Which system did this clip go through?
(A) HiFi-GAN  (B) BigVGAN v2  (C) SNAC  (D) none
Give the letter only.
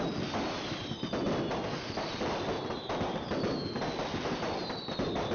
D